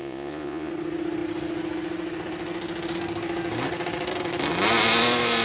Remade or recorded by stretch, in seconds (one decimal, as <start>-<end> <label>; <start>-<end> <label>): 0.0-0.7 remade; 0.7-5.4 recorded

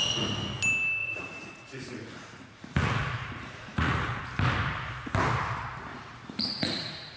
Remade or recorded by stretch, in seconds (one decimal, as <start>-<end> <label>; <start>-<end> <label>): 0.0-1.0 recorded; 1.0-4.2 remade; 4.2-5.9 recorded; 5.9-7.2 remade

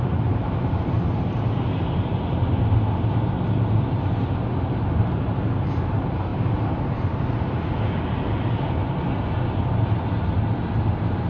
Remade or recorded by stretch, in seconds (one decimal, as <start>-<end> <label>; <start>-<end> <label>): 0.0-11.3 recorded